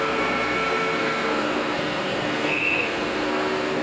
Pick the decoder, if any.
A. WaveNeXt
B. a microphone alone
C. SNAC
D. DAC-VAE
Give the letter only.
C